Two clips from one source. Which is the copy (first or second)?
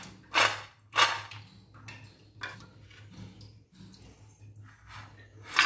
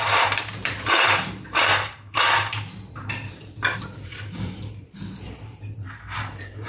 second